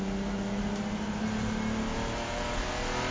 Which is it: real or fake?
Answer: real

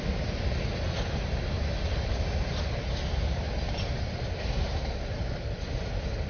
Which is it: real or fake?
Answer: real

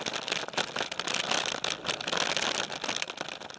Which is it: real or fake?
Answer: real